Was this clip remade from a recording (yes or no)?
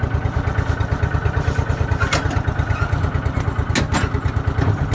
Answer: no